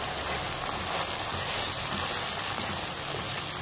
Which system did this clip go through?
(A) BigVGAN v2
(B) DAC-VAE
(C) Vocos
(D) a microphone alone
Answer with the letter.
D